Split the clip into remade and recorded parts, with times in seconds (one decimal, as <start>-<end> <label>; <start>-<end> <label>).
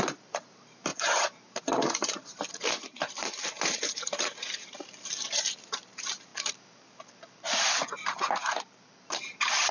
0.0-6.3 remade; 6.3-9.1 recorded; 9.1-9.7 remade